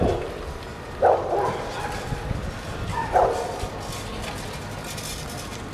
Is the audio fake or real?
real